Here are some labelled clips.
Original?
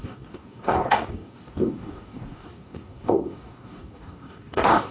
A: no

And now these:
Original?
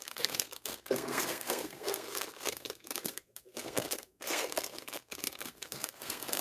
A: no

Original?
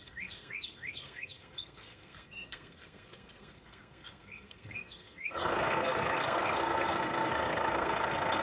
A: no